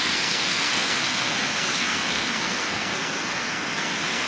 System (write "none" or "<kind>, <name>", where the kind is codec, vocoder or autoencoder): codec, SNAC